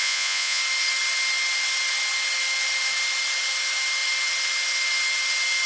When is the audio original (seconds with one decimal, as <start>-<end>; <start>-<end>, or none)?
0.6-5.7